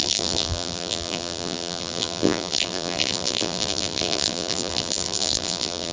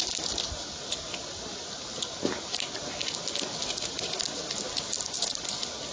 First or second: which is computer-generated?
first